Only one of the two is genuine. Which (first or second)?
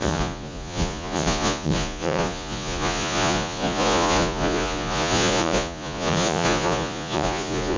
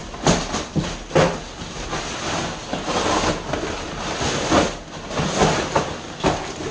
second